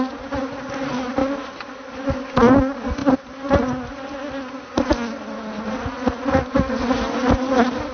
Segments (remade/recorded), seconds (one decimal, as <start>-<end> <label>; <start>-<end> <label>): 0.0-7.9 recorded